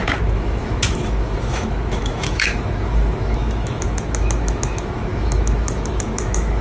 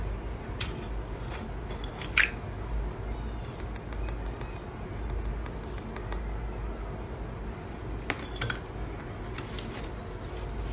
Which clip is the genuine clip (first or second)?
second